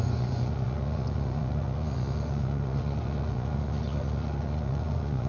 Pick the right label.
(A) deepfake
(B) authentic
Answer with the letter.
A